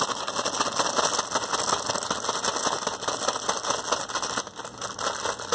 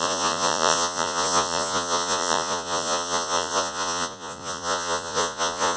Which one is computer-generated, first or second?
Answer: second